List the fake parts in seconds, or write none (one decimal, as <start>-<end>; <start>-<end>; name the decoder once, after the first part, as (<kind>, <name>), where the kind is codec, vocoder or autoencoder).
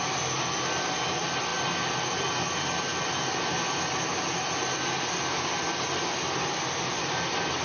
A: none